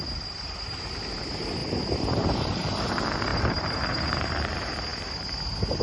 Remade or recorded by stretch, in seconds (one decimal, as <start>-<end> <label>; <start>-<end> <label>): 0.0-1.6 recorded; 1.6-2.9 remade; 2.9-3.3 recorded; 3.3-4.3 remade; 4.3-5.8 recorded